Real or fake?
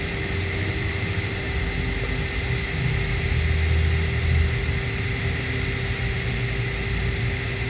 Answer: real